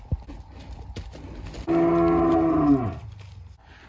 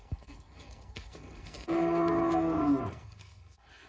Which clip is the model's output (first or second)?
second